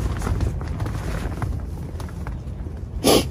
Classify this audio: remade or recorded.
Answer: recorded